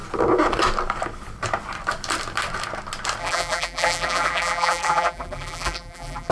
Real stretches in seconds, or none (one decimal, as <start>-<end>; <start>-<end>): 0.0-3.2

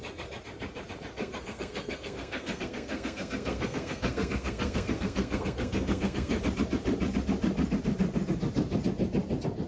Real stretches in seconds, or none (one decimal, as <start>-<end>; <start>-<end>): 0.0-1.2; 6.4-9.7

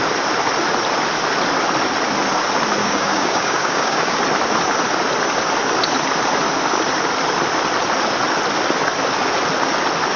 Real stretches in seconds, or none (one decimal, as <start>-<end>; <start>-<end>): 0.0-2.8; 4.2-10.2

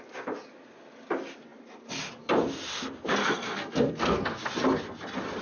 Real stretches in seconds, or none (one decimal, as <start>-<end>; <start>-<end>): 0.0-3.2; 4.5-5.4

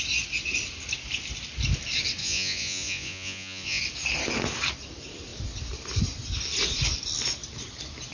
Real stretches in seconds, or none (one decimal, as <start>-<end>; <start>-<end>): 0.0-2.2; 3.8-8.1

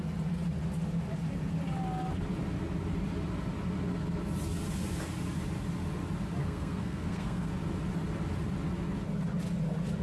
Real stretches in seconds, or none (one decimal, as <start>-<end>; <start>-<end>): 0.0-6.4; 7.5-10.0

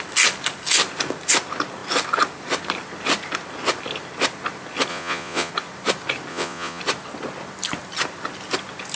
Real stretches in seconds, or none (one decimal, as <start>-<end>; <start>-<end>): 0.0-4.9; 5.5-6.3; 6.8-9.0

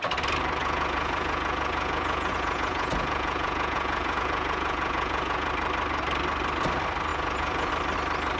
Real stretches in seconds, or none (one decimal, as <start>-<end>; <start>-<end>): 0.0-0.6; 5.5-7.1; 7.7-8.4